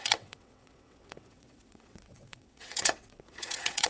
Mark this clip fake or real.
fake